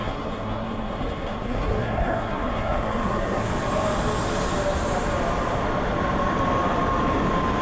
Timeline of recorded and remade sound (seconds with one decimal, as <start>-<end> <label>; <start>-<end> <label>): 0.0-3.5 remade; 3.5-7.6 recorded